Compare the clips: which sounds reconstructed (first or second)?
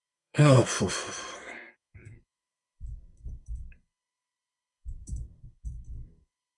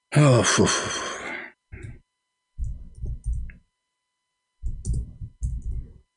first